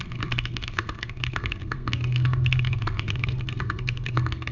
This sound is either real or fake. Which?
fake